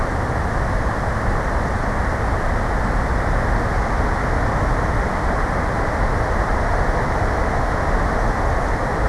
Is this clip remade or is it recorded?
recorded